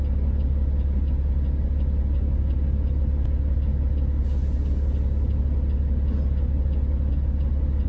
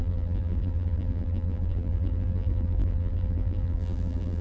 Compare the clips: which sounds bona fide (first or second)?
first